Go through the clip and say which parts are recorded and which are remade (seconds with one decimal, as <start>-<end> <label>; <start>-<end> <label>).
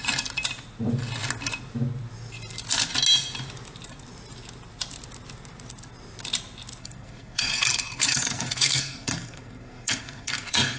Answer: 0.0-6.8 recorded; 6.8-10.8 remade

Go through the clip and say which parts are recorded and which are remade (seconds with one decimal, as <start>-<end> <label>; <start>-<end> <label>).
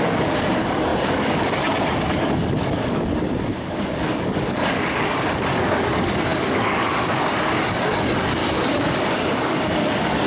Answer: 0.0-8.4 remade; 8.4-8.9 recorded; 8.9-10.3 remade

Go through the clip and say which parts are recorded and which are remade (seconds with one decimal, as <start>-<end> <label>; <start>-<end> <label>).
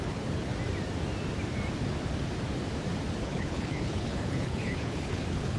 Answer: 0.0-0.5 remade; 0.5-3.2 recorded; 3.2-5.6 remade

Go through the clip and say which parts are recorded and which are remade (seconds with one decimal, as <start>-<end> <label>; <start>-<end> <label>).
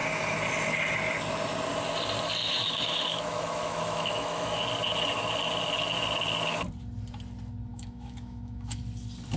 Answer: 0.0-2.4 recorded; 2.4-4.6 remade; 4.6-7.7 recorded; 7.7-8.8 remade; 8.8-9.4 recorded